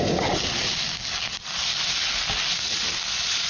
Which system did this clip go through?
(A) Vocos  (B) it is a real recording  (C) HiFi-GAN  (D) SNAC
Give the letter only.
B